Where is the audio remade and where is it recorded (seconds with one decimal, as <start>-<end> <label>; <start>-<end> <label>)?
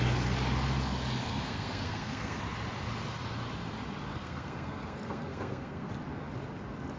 0.0-1.3 recorded; 1.3-2.4 remade; 2.4-4.1 recorded; 4.1-5.9 remade; 5.9-7.0 recorded